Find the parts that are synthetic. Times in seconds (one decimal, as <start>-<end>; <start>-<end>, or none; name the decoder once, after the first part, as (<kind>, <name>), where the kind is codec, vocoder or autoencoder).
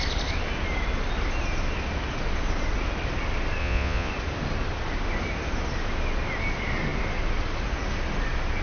3.6-4.1 (vocoder, Vocos)